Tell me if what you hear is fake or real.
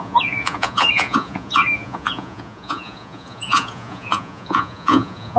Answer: fake